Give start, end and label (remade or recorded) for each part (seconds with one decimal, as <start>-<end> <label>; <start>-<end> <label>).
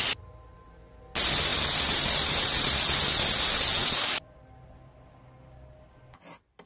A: 0.0-1.5 recorded; 1.5-2.3 remade; 2.3-3.8 recorded; 3.8-4.4 remade; 4.4-6.7 recorded